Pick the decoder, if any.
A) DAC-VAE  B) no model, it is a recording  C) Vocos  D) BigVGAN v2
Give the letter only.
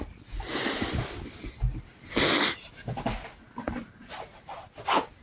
B